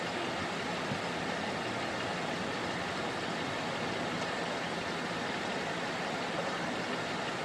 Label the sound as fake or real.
real